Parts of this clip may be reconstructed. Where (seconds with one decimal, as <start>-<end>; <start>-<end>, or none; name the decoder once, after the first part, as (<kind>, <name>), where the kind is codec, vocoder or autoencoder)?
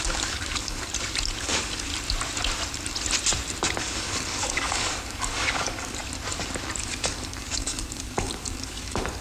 0.0-0.9 (codec, DAC); 1.4-1.9; 3.8-6.0; 6.8-9.2